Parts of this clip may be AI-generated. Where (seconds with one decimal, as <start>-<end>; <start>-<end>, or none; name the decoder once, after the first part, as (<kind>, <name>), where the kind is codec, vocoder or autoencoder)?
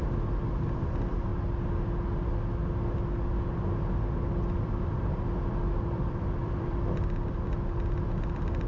0.0-1.3 (vocoder, BigVGAN v2); 4.3-8.7